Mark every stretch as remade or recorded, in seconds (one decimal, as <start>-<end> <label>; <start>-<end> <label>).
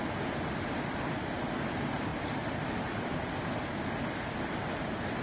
0.0-5.2 recorded